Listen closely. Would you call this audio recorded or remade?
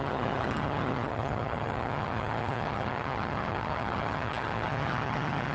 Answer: remade